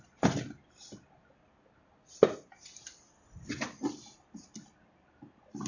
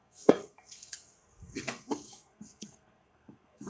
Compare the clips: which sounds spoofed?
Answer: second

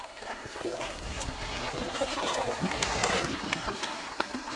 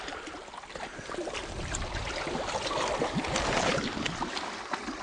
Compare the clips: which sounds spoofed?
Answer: first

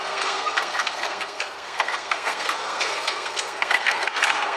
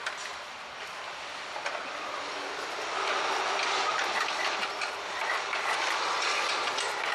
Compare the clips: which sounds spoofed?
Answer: first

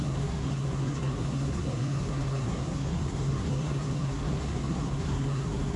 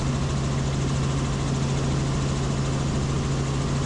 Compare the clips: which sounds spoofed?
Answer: first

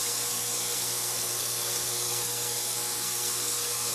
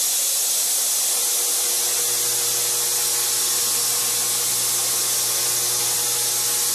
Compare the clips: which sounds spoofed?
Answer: first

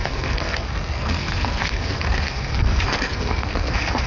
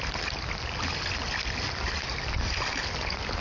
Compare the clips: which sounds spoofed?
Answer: first